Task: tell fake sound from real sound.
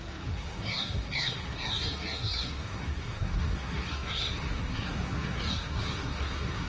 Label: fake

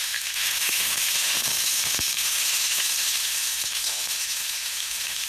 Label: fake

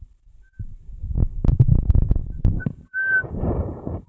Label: fake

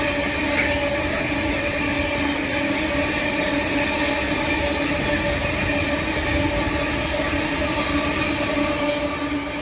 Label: real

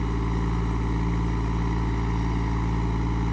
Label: real